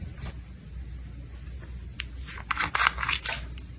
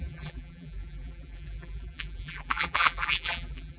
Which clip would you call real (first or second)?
first